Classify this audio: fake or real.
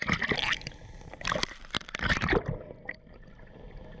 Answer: real